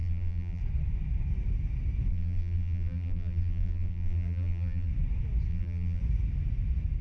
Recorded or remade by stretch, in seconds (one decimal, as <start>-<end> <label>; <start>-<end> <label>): 0.0-0.6 remade; 0.6-2.1 recorded; 2.1-4.9 remade; 4.9-5.5 recorded; 5.5-6.0 remade; 6.0-7.0 recorded